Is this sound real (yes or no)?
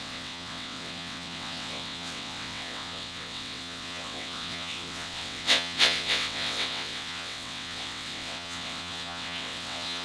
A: no